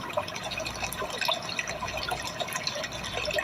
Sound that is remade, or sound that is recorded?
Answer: recorded